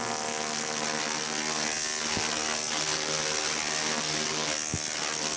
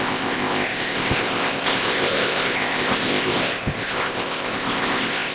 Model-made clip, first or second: second